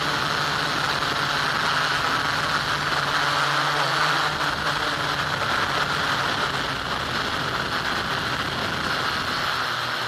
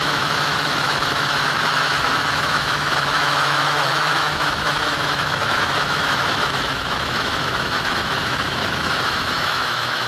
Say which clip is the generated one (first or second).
second